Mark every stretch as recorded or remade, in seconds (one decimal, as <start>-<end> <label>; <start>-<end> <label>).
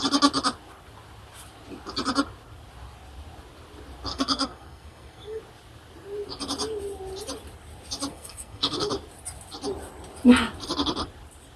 0.0-4.1 recorded; 4.1-5.4 remade; 5.4-8.1 recorded; 8.1-8.9 remade; 8.9-11.6 recorded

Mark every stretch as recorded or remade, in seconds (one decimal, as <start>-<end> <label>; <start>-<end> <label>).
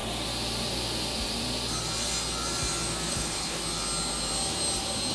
0.0-3.1 recorded; 3.1-3.6 remade; 3.6-5.1 recorded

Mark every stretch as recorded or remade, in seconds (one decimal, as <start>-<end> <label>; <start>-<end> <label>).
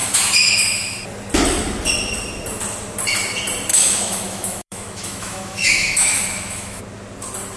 0.0-1.0 remade; 1.0-3.7 recorded; 3.7-6.8 remade; 6.8-7.6 recorded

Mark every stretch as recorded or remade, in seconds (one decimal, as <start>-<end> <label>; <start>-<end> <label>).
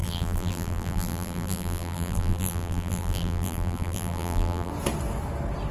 0.0-4.7 remade; 4.7-5.7 recorded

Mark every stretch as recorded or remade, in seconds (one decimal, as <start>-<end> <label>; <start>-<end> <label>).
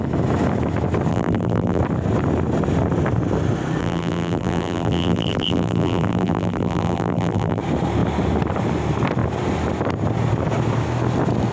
0.0-1.1 recorded; 1.1-1.8 remade; 1.8-3.8 recorded; 3.8-7.6 remade; 7.6-11.5 recorded